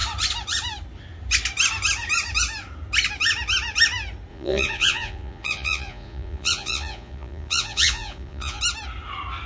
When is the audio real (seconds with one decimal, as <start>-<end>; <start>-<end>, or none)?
0.0-4.3; 8.6-9.5